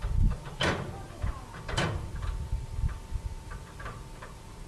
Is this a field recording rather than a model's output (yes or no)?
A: yes